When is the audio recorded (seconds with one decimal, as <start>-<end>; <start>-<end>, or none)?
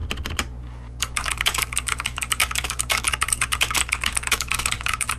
0.0-0.6